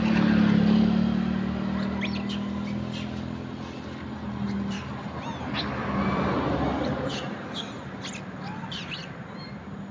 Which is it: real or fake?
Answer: real